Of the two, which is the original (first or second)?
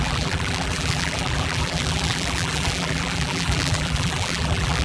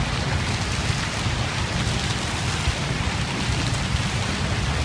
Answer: second